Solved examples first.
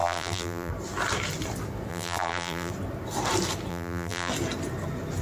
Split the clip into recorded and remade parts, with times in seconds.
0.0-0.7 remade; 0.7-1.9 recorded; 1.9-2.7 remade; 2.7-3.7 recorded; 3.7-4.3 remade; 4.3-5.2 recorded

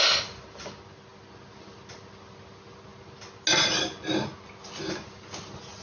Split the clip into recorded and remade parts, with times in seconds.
0.0-5.8 recorded

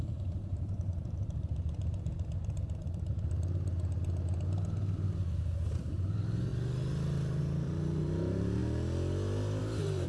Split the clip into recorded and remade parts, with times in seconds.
0.0-2.1 remade; 2.1-5.8 recorded; 5.8-6.5 remade; 6.5-7.4 recorded; 7.4-8.6 remade; 8.6-9.6 recorded; 9.6-10.1 remade

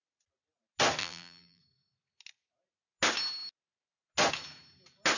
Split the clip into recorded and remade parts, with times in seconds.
0.0-1.0 recorded; 1.0-1.6 remade; 1.6-5.2 recorded

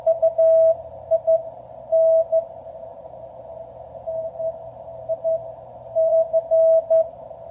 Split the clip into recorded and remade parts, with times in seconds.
0.0-2.9 recorded; 2.9-6.3 remade; 6.3-7.5 recorded